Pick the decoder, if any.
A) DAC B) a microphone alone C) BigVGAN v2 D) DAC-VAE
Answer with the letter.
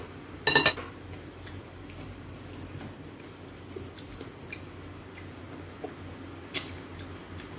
B